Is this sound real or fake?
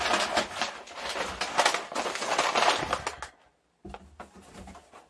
real